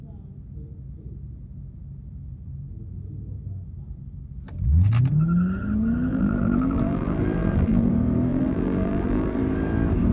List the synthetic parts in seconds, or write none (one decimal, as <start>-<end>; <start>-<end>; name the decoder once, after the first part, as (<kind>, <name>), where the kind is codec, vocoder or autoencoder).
6.1-7.9 (vocoder, BigVGAN v2); 8.3-9.4